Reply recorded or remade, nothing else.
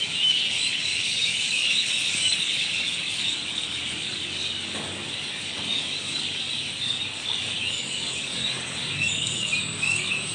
remade